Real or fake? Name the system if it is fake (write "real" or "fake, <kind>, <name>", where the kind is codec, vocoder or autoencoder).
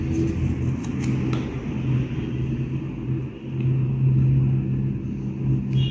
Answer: real